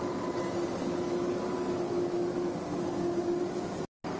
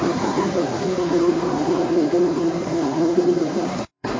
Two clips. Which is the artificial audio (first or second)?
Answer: second